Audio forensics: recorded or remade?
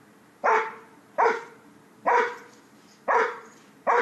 remade